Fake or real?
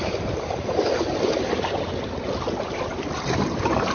real